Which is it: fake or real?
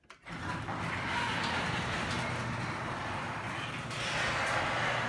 real